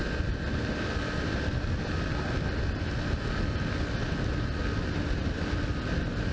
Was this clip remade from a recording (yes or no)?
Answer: no